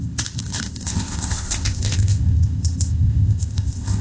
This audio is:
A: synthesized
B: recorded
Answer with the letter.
A